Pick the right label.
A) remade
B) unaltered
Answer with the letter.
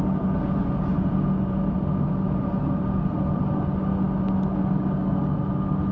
B